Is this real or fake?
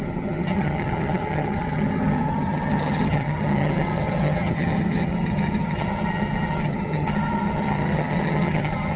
fake